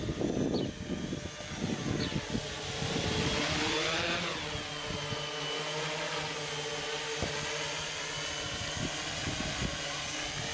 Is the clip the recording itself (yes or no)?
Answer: yes